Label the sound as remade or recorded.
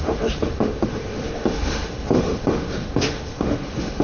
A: remade